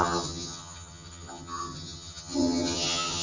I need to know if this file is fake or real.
fake